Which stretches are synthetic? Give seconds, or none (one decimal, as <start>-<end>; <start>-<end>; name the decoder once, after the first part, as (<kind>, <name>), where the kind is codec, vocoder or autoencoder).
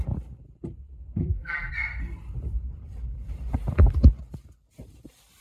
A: 1.2-1.7 (vocoder, BigVGAN v2)